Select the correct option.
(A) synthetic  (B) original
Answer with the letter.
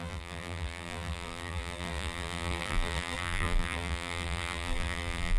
A